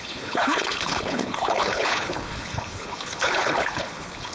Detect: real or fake fake